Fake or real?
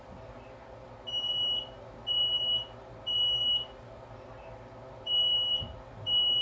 real